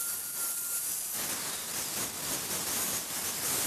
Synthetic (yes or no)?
no